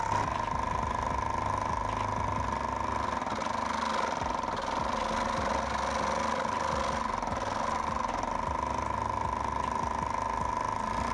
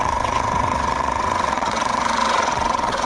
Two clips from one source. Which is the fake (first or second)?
second